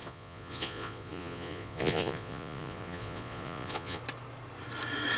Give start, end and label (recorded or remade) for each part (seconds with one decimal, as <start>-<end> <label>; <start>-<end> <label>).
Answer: 0.0-4.0 remade; 4.0-5.2 recorded